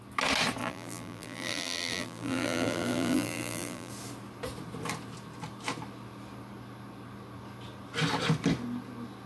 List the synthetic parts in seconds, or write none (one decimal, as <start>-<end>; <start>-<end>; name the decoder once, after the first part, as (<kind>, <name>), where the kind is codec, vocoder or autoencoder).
0.6-3.9 (vocoder, BigVGAN v2)